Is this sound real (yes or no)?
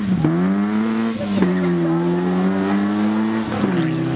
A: yes